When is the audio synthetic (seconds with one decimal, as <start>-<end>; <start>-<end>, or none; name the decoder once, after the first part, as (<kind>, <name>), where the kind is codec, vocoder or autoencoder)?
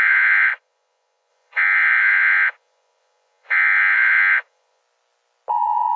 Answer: 0.0-4.8 (vocoder, Vocos); 5.5-6.0